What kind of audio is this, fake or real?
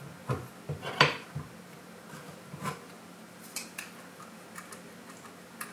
real